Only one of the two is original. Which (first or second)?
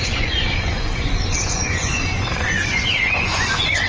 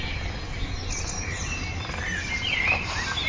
second